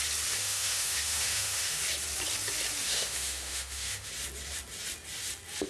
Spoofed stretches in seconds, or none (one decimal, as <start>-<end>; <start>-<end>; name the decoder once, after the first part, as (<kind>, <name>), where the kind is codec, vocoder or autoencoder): 0.4-1.8 (autoencoder, DAC-VAE); 2.8-4.1

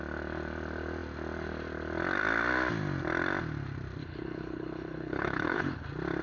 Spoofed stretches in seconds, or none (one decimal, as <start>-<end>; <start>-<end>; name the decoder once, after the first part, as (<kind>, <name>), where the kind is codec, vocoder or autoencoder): 4.0-5.8 (codec, HILCodec)

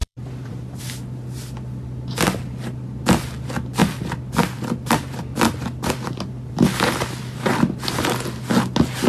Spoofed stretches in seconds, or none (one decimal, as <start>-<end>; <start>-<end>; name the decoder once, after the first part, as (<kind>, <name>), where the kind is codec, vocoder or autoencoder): 0.0-0.8 (vocoder, BigVGAN v2); 3.8-6.5